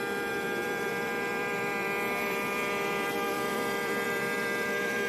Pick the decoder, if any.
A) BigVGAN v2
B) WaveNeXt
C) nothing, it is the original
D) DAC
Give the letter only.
A